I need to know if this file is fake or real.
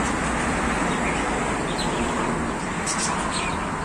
real